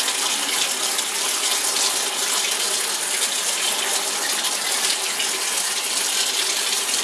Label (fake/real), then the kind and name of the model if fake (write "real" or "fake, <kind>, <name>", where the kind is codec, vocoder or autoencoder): real